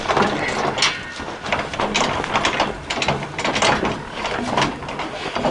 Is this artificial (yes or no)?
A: no